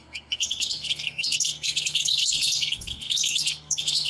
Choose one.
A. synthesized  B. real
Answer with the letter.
A